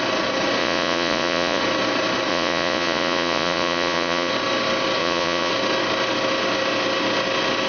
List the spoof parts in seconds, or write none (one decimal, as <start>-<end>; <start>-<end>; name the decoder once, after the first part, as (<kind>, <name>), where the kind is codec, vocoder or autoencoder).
0.6-1.6 (vocoder, Vocos); 2.3-4.3; 5.0-5.5